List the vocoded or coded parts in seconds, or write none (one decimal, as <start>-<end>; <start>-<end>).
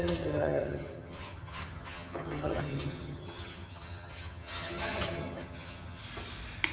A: 0.0-6.0